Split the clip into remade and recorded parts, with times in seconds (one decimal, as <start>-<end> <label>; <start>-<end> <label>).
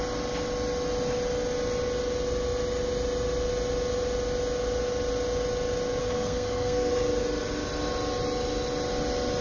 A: 0.0-6.0 recorded; 6.0-6.9 remade; 6.9-9.4 recorded